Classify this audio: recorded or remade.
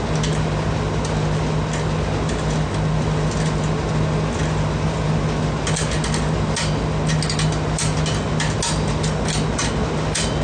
recorded